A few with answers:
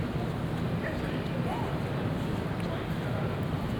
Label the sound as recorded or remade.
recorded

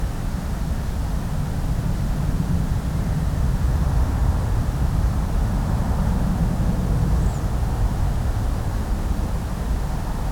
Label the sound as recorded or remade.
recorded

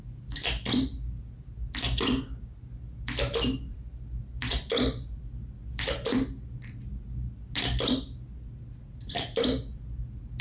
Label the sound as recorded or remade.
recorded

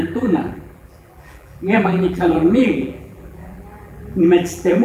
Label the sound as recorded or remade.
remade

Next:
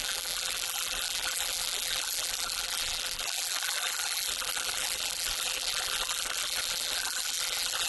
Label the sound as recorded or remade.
remade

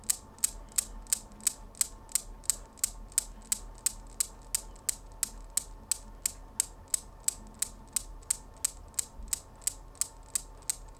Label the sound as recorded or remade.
recorded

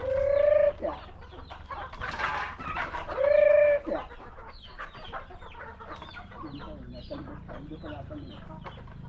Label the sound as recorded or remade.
recorded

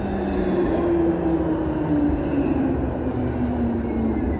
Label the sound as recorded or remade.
recorded